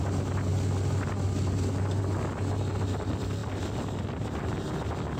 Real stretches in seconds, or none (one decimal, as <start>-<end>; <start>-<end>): 0.0-5.2